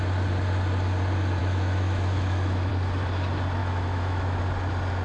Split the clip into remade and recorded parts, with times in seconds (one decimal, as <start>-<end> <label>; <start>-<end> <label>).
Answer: 0.0-1.4 recorded; 1.4-2.7 remade; 2.7-3.6 recorded; 3.6-4.4 remade; 4.4-5.0 recorded